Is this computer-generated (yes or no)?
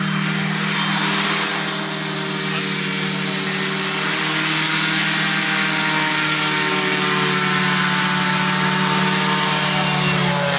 no